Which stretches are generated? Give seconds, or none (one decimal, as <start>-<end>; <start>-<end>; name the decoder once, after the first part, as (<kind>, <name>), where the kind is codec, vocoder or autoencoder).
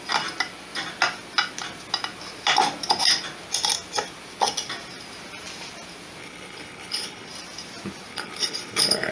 6.2-7.3 (codec, HILCodec); 8.1-9.1